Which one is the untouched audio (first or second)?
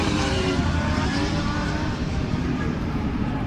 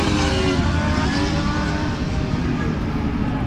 second